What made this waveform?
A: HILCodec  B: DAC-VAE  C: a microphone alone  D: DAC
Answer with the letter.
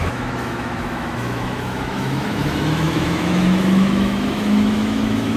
B